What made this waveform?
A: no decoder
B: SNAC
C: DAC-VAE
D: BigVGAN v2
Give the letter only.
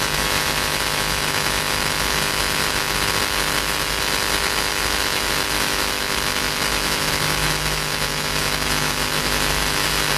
C